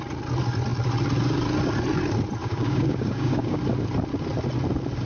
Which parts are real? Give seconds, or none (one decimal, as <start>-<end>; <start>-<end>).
0.0-2.4; 3.6-5.1